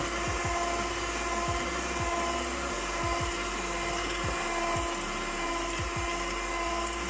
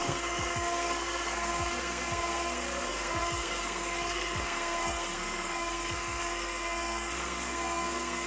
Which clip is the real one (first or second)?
first